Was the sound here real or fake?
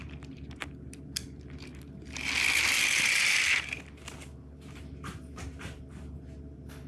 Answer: real